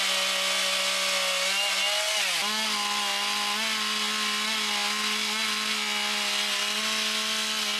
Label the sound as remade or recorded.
recorded